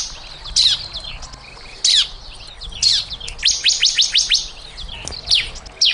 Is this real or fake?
real